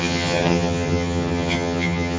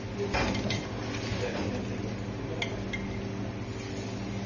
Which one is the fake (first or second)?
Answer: first